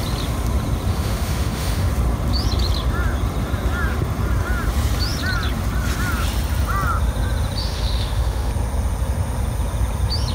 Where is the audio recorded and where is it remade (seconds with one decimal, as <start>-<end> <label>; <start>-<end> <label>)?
0.0-0.9 recorded; 0.9-1.9 remade; 1.9-7.6 recorded; 7.6-8.5 remade; 8.5-10.3 recorded